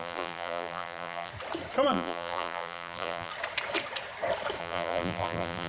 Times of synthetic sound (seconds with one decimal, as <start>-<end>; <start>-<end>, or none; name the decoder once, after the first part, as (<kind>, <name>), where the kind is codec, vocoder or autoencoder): 0.0-1.3 (vocoder, BigVGAN v2); 1.9-3.3; 4.6-5.7